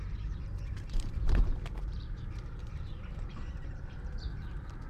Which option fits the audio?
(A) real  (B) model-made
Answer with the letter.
B